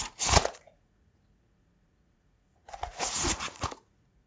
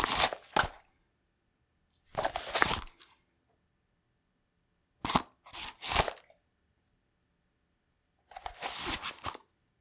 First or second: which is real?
second